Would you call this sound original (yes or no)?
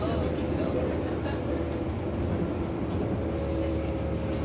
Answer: yes